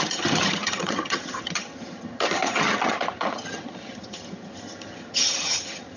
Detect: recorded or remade remade